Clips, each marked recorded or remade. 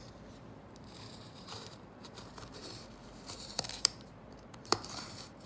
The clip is remade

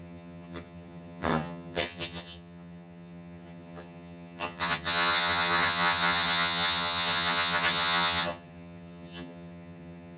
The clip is remade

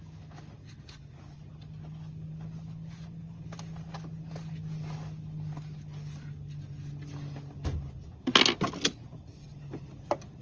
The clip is recorded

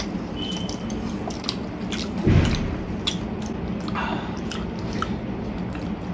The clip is recorded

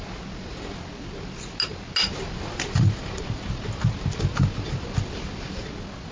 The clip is recorded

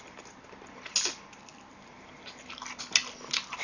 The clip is recorded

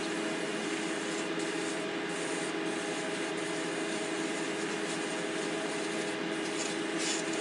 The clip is recorded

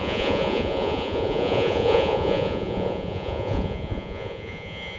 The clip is remade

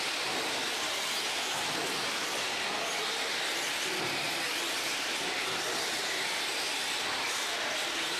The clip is recorded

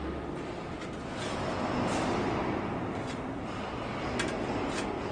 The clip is recorded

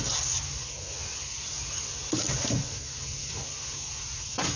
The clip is recorded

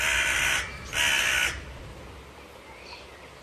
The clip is recorded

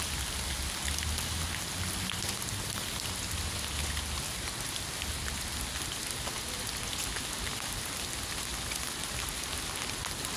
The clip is recorded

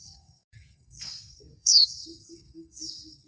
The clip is remade